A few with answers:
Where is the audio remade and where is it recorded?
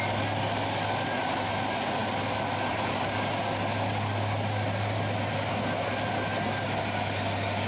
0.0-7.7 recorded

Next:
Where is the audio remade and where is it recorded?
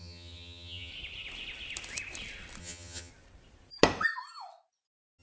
0.0-0.9 remade; 0.9-2.6 recorded; 2.6-3.1 remade; 3.1-5.2 recorded